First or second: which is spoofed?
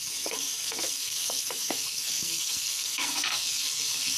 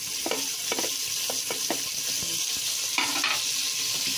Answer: first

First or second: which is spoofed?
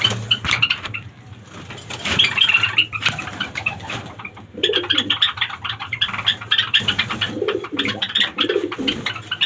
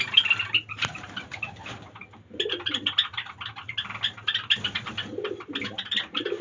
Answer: first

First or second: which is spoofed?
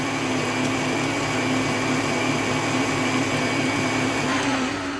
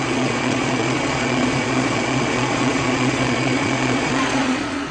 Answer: second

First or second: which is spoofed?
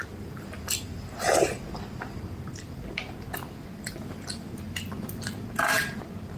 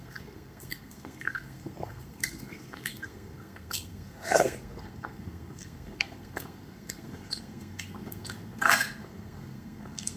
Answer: second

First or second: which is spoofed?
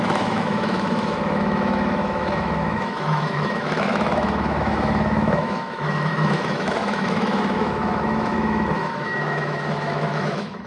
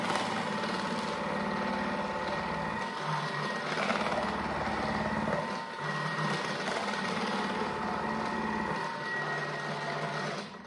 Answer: first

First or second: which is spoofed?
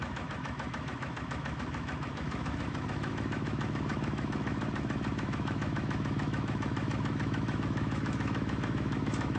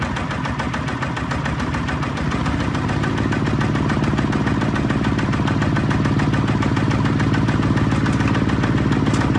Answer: first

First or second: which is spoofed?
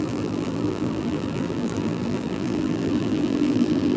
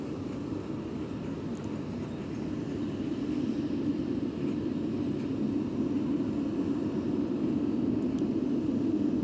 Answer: first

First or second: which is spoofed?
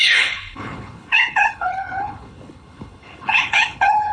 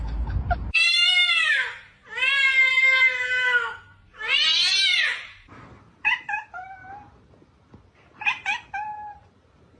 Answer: first